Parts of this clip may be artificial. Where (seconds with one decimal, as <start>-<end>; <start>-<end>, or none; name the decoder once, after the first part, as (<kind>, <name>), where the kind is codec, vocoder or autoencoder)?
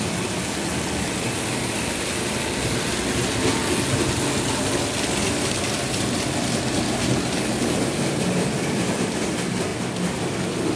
none